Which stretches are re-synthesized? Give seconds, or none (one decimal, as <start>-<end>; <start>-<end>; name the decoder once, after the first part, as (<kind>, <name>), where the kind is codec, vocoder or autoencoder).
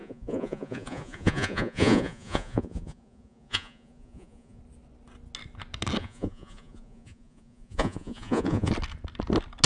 0.0-4.6 (vocoder, Vocos); 6.0-8.7